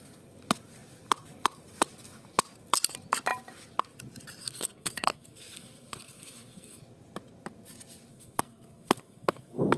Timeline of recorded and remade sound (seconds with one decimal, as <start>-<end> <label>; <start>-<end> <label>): 0.0-4.4 recorded; 4.4-6.8 remade; 6.8-8.1 recorded; 8.1-9.8 remade